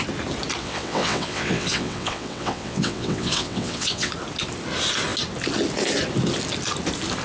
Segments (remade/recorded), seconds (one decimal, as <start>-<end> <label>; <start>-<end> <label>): 0.0-0.6 recorded; 0.6-4.1 remade; 4.1-7.2 recorded